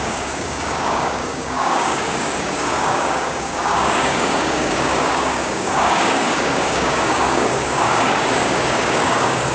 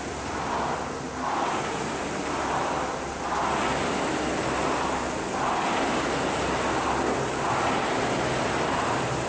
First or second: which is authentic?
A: second